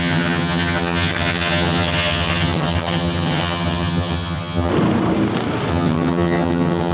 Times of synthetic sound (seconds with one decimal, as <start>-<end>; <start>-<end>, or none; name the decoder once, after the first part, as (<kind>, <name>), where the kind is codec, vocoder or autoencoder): 0.0-4.7 (vocoder, HiFi-GAN); 5.7-6.9